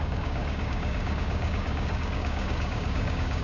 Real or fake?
fake